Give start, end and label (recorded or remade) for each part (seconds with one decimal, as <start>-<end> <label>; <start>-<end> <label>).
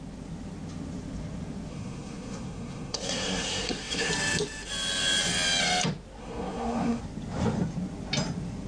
0.0-1.7 recorded; 1.7-4.1 remade; 4.1-6.2 recorded; 6.2-7.0 remade; 7.0-8.7 recorded